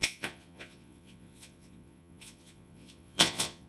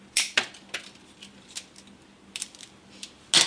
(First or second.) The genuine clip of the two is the second